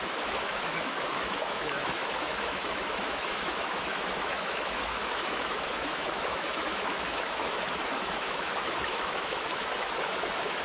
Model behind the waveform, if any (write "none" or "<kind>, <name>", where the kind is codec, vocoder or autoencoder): autoencoder, DAC-VAE